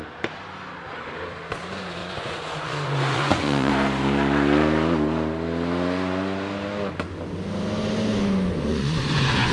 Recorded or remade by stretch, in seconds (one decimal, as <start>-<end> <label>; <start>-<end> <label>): 0.0-2.0 recorded; 2.0-3.7 remade; 3.7-8.7 recorded; 8.7-9.5 remade